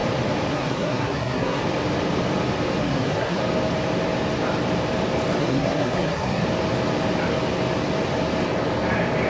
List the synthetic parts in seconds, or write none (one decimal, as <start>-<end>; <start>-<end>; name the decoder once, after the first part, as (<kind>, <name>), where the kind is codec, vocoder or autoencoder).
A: 0.5-1.6 (codec, SNAC); 2.8-3.4; 5.4-6.4